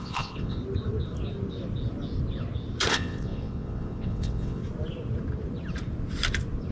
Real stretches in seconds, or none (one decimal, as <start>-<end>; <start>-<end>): 0.6-2.9; 4.6-6.7